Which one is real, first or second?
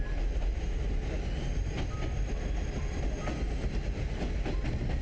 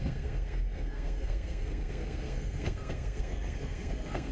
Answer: first